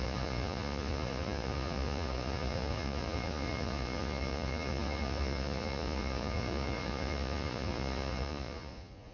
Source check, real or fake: fake